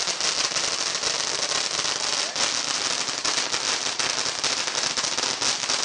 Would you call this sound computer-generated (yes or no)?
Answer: no